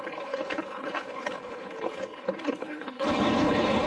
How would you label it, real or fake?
fake